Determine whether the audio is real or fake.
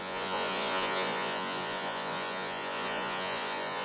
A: fake